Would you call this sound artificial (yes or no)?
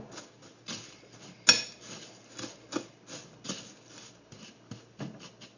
no